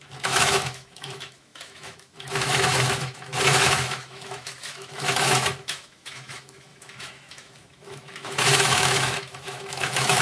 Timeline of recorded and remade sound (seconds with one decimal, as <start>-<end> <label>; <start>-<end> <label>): 0.0-10.2 remade

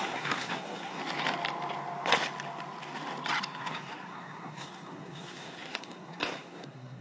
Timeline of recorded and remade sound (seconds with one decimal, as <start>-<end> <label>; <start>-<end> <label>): 0.0-1.0 remade; 1.0-3.6 recorded; 3.6-7.0 remade